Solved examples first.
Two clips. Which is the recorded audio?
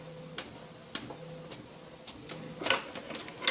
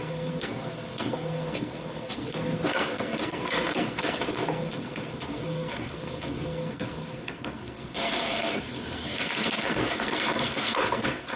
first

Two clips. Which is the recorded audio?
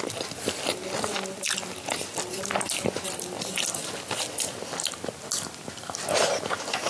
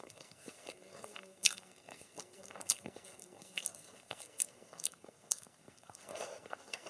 first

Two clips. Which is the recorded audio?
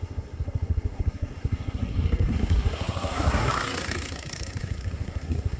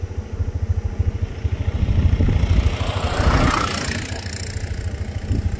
second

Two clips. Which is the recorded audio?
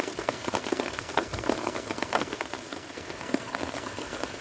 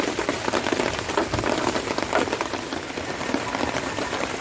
second